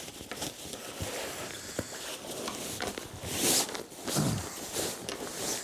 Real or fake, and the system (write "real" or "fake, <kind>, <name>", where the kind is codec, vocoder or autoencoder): real